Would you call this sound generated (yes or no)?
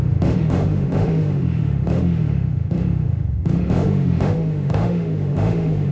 yes